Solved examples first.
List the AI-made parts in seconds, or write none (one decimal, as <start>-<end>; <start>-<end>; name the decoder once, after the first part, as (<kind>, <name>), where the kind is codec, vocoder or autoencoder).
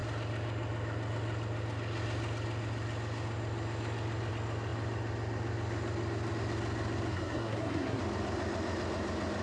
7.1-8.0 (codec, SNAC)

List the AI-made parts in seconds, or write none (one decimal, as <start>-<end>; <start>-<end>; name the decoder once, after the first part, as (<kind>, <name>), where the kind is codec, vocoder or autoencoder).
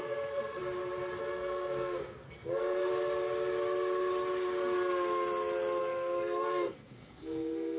0.0-0.6 (codec, SNAC); 1.2-2.9; 5.8-7.8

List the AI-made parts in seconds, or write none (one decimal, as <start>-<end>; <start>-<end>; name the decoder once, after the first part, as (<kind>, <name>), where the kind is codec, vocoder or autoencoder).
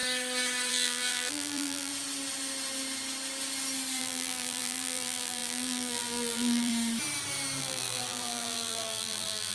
0.7-1.9 (vocoder, BigVGAN v2); 4.0-6.7; 7.6-9.5